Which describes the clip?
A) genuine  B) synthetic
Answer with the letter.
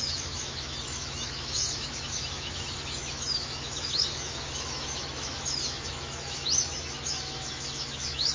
B